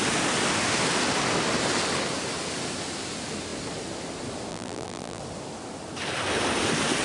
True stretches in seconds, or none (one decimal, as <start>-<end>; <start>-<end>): 0.0-4.5; 5.2-7.0